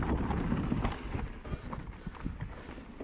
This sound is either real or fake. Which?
real